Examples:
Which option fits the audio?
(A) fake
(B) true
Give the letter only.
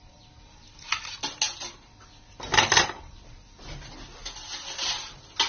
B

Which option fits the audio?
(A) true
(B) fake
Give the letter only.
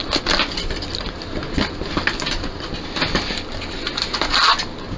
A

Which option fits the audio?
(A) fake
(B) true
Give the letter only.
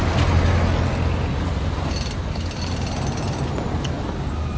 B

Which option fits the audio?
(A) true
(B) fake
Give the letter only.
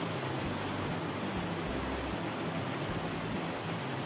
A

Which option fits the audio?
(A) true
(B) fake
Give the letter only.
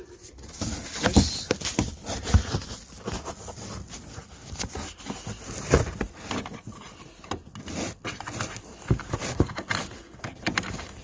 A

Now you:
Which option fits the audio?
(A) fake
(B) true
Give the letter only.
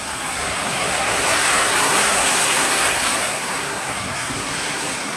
A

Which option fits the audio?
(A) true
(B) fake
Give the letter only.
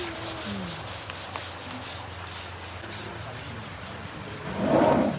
A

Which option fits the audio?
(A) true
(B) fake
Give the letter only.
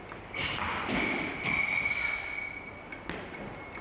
A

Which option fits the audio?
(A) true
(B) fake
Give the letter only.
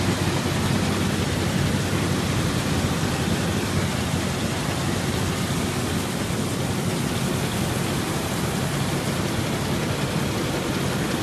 A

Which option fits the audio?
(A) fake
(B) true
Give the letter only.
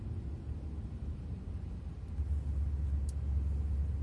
B